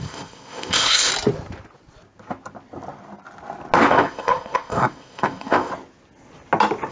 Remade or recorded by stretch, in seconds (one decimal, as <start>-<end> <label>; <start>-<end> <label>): 0.0-1.1 remade; 1.1-3.9 recorded; 3.9-5.7 remade; 5.7-6.9 recorded